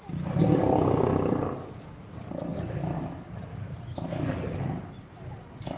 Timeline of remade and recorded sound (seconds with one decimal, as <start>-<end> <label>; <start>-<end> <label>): 0.0-3.5 recorded; 3.5-4.2 remade; 4.2-5.8 recorded